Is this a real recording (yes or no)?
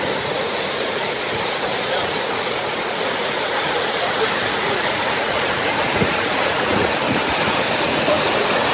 no